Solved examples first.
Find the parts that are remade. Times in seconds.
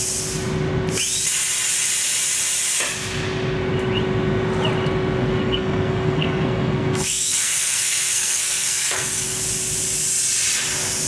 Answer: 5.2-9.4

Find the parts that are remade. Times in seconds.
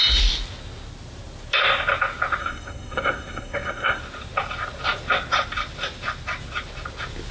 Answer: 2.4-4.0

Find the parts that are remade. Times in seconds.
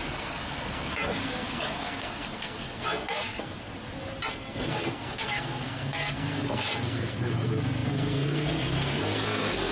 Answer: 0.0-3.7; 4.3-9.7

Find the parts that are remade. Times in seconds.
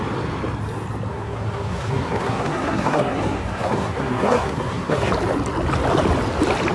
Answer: 1.1-5.1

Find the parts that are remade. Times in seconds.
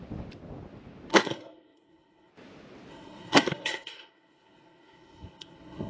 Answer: 1.1-2.3; 2.9-5.9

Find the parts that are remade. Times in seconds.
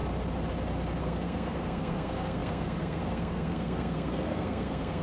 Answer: 1.0-5.0